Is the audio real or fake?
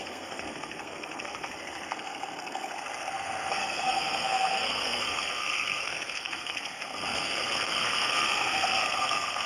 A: fake